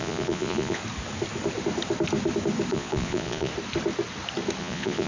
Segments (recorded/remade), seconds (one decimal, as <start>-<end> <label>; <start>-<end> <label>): 0.0-0.8 remade; 0.8-2.7 recorded; 2.7-3.5 remade; 3.5-4.6 recorded; 4.6-5.1 remade